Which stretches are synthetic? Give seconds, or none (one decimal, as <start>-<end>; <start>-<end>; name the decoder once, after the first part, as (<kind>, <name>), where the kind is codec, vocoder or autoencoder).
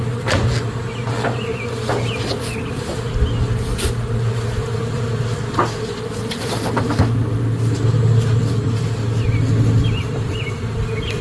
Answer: none